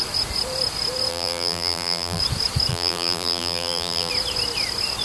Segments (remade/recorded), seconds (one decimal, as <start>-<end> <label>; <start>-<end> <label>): 0.0-1.1 recorded; 1.1-2.2 remade; 2.2-2.7 recorded; 2.7-4.1 remade; 4.1-5.0 recorded